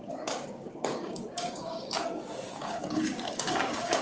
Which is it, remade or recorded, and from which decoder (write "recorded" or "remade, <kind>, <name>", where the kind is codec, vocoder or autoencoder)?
remade, codec, DAC